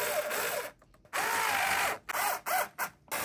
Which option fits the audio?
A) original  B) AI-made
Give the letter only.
A